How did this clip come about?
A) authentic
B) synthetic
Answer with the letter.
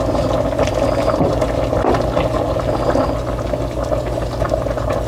A